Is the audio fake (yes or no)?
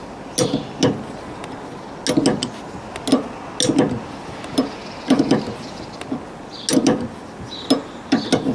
no